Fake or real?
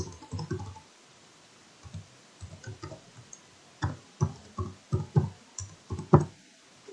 real